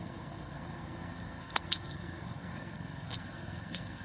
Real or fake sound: fake